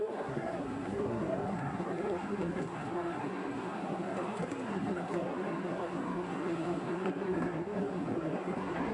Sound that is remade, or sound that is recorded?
remade